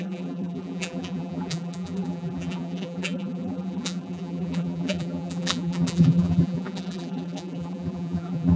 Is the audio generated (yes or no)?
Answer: yes